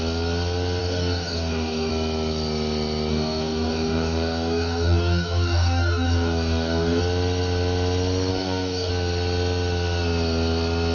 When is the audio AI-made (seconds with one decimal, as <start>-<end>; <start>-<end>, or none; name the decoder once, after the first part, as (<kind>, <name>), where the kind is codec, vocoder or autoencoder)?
0.8-1.9 (codec, DAC); 3.1-7.0; 8.3-8.9